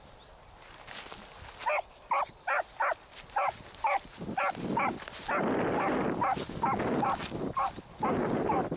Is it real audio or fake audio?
real